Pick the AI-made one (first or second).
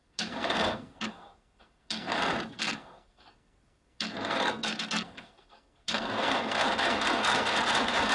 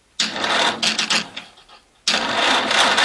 first